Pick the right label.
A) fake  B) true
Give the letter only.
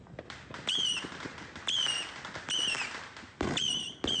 B